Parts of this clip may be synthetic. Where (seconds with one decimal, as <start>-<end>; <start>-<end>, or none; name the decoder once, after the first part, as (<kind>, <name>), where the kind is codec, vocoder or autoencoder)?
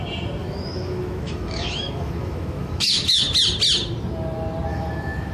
0.4-3.2 (autoencoder, DAC-VAE); 4.7-5.3